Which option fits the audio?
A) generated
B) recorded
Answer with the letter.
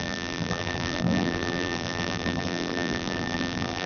A